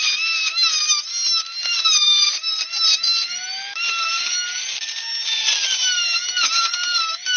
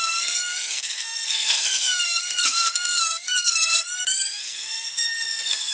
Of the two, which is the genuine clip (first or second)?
first